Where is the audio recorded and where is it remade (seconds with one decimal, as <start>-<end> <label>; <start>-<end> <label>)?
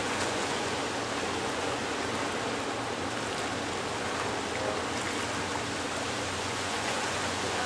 0.0-0.8 remade; 0.8-1.4 recorded; 1.4-1.8 remade; 1.8-6.4 recorded; 6.4-7.7 remade